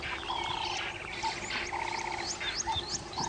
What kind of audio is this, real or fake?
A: real